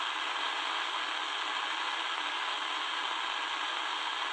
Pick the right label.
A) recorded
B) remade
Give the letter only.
A